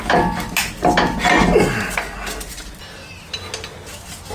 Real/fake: real